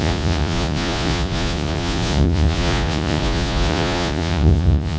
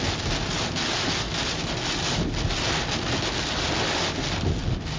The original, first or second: second